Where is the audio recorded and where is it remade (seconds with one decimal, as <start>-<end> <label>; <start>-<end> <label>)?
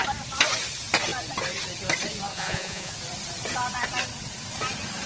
0.0-2.3 recorded; 2.3-2.9 remade; 2.9-5.1 recorded